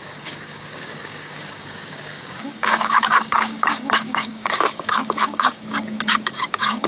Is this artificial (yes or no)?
yes